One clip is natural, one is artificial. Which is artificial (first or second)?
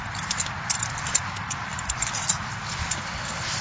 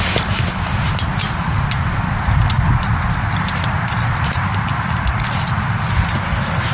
first